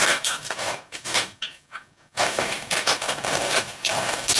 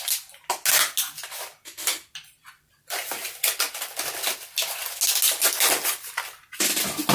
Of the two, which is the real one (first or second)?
second